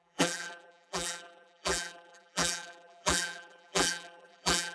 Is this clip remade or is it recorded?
remade